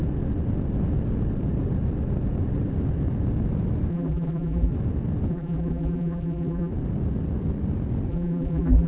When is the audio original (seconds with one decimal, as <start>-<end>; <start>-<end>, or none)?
0.0-3.9; 4.7-5.3; 6.7-8.1

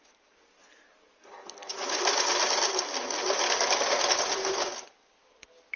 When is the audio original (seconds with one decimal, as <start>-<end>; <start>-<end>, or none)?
0.0-1.7; 2.2-5.8